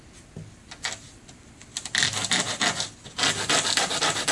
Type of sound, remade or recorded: recorded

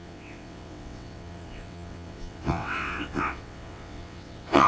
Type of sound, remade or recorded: remade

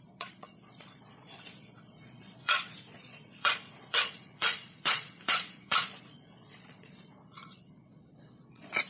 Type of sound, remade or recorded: remade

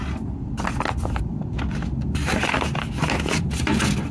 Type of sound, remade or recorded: recorded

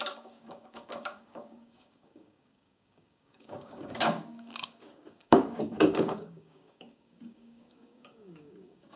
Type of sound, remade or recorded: remade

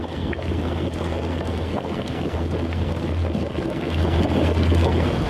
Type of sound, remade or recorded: remade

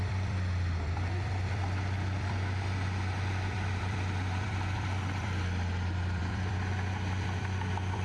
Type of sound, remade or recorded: remade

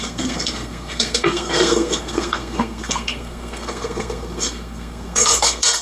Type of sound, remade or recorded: remade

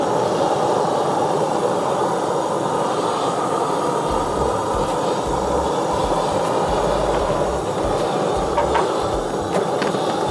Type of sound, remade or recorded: recorded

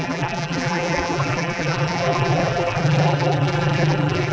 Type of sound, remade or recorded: remade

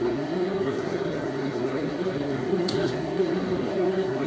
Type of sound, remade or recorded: remade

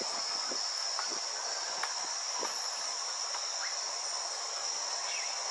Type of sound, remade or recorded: recorded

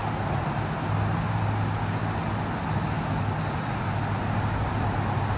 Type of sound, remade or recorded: recorded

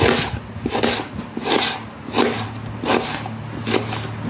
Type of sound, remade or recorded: recorded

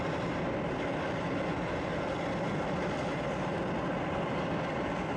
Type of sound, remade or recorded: recorded